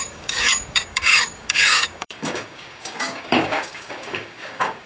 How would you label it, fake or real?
fake